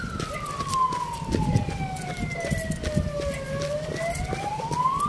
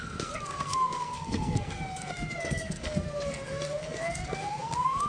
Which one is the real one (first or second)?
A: first